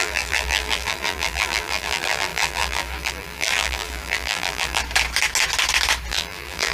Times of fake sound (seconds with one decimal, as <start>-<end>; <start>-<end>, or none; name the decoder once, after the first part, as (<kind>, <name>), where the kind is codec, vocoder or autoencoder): 0.0-4.8 (vocoder, BigVGAN v2); 6.1-6.7